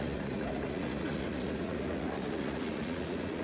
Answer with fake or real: fake